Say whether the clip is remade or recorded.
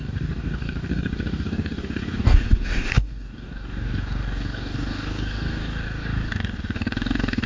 remade